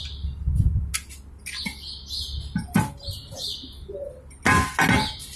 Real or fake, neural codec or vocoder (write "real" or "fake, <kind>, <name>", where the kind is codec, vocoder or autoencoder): real